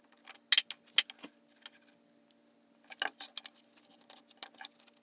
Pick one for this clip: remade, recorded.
recorded